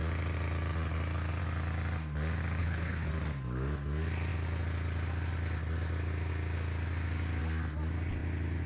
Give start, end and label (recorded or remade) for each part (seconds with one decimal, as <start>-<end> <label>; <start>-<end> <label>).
0.0-2.6 recorded; 2.6-3.1 remade; 3.1-8.7 recorded